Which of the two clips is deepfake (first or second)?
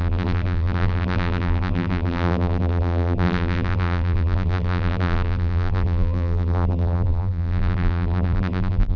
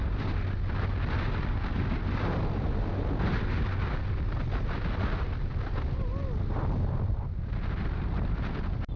first